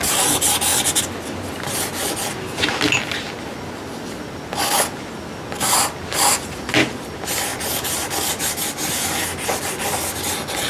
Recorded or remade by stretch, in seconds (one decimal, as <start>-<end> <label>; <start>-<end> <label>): 0.0-10.7 recorded